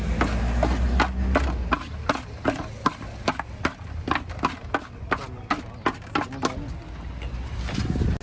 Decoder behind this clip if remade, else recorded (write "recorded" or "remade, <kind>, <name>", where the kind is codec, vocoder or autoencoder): recorded